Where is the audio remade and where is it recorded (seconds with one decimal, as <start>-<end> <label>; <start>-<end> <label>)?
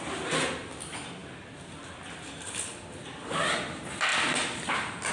0.0-5.1 recorded